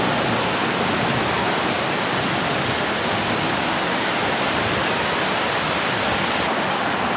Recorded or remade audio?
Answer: recorded